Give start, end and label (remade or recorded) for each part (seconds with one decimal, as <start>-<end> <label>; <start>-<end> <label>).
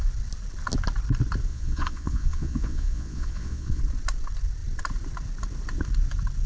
0.0-1.5 recorded; 1.5-3.8 remade; 3.8-6.5 recorded